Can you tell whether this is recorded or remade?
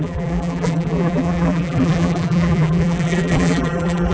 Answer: remade